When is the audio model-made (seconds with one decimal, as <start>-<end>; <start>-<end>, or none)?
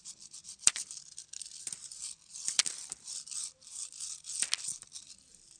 0.0-3.4; 4.8-5.6